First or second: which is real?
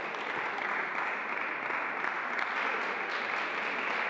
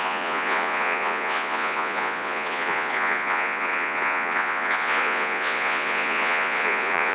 first